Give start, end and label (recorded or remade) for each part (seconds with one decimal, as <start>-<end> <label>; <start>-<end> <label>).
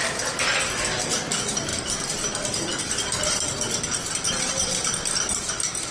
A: 0.0-5.9 recorded